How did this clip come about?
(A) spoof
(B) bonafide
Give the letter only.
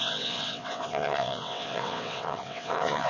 A